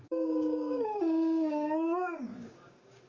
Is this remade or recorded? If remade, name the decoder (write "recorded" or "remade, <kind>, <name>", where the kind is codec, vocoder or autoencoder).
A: remade, codec, DAC